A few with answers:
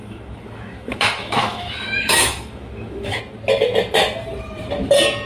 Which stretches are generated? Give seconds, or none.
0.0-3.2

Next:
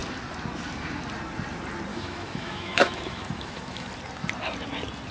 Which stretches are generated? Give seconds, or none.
1.9-3.9

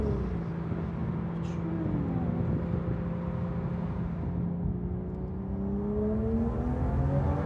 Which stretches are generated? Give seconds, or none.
none